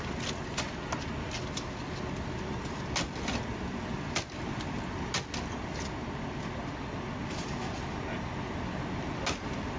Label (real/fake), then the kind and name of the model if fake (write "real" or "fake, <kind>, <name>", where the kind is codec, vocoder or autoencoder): real